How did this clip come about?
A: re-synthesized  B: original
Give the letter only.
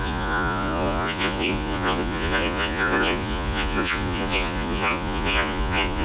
A